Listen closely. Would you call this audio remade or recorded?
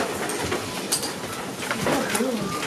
recorded